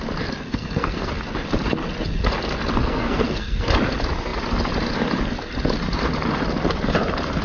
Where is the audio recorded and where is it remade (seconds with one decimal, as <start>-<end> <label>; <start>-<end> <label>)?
0.0-0.5 recorded; 0.5-1.1 remade; 1.1-2.8 recorded; 2.8-3.7 remade; 3.7-7.4 recorded

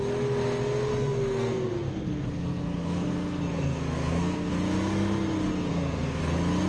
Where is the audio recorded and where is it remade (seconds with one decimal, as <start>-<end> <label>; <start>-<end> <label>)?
0.0-0.9 recorded; 0.9-4.5 remade; 4.5-5.7 recorded; 5.7-6.2 remade; 6.2-6.7 recorded

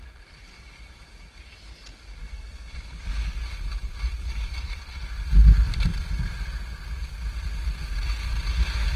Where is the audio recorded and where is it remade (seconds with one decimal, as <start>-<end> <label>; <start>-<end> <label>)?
0.0-2.2 recorded; 2.2-2.7 remade; 2.7-9.0 recorded

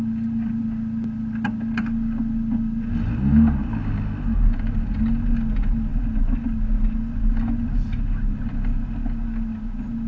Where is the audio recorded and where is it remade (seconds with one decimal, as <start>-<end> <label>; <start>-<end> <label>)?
0.0-10.1 recorded

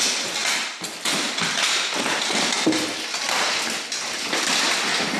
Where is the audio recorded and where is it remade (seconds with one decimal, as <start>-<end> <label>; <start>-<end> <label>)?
0.0-5.2 recorded

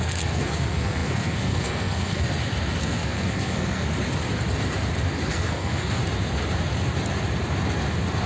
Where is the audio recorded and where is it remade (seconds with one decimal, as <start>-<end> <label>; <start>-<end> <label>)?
0.0-2.3 remade; 2.3-2.8 recorded; 2.8-3.9 remade; 3.9-5.3 recorded; 5.3-6.0 remade; 6.0-8.3 recorded

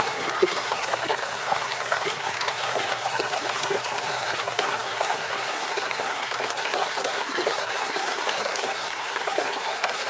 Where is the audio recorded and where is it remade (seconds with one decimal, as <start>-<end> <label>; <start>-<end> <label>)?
0.0-10.1 remade